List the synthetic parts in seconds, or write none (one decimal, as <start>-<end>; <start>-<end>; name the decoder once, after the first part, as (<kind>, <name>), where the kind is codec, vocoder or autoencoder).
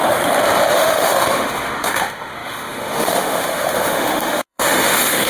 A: 0.7-5.3 (autoencoder, DAC-VAE)